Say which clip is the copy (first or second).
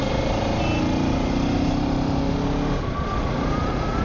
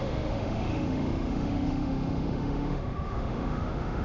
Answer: second